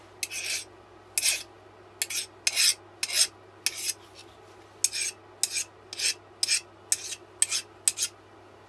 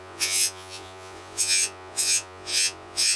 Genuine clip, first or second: first